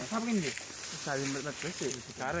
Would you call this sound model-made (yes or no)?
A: no